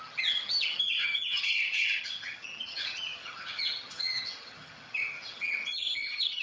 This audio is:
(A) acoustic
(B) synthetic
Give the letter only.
B